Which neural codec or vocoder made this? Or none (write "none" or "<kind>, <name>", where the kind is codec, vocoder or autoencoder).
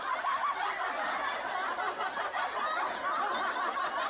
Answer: none